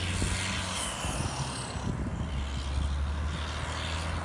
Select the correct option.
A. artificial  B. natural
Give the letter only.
B